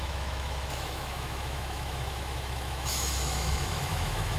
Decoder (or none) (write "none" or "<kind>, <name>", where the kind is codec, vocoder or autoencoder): autoencoder, DAC-VAE